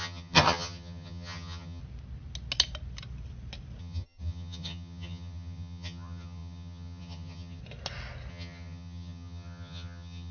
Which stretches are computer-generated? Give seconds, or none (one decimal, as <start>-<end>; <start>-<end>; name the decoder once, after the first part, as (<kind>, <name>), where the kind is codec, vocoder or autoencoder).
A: 0.0-1.8 (vocoder, HiFi-GAN); 3.8-7.6; 8.3-10.3